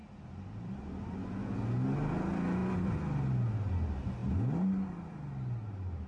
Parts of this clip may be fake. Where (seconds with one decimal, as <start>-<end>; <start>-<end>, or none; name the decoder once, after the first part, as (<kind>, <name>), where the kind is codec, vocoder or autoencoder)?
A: 0.0-0.7 (vocoder, BigVGAN v2)